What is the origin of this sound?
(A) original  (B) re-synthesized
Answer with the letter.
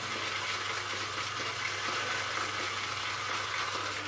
A